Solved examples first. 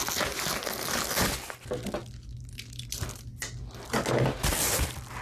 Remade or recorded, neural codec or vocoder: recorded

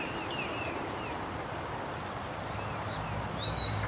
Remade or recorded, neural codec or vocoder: recorded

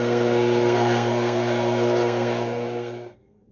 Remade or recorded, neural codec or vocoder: remade, codec, SNAC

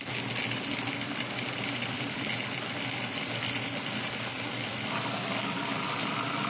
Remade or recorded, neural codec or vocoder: recorded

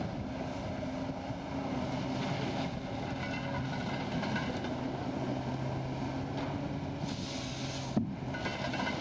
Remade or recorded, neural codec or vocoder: recorded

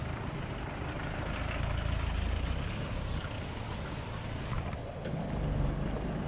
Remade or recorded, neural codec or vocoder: recorded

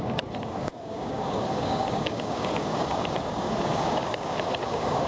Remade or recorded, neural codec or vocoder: remade, codec, DAC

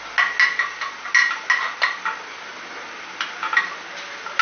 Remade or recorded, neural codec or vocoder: recorded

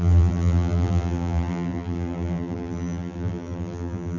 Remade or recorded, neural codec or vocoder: remade, vocoder, BigVGAN v2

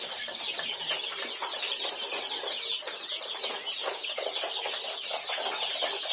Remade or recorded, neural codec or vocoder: recorded